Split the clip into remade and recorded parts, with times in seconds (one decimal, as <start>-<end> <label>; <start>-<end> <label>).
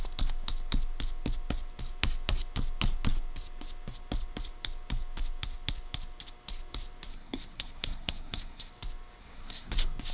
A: 0.0-7.1 recorded; 7.1-8.7 remade; 8.7-9.2 recorded; 9.2-9.7 remade; 9.7-10.1 recorded